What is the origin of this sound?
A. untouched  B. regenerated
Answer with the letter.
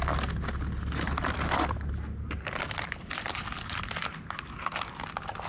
A